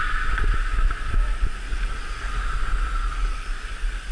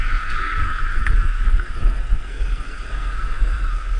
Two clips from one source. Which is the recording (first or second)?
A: first